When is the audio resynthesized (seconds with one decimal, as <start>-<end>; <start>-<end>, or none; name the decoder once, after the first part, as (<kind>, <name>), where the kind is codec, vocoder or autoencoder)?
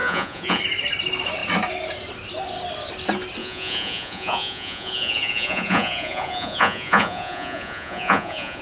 0.0-0.6 (vocoder, Vocos); 3.4-8.6